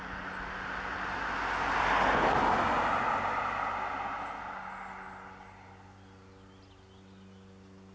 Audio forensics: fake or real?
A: real